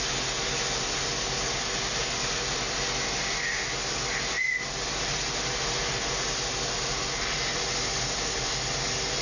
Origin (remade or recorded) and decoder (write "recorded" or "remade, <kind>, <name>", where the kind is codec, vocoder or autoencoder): recorded